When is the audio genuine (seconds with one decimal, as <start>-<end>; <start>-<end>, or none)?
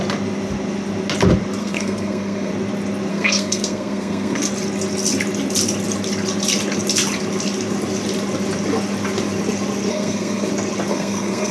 0.0-1.6; 2.5-3.1; 4.4-9.9; 10.5-10.9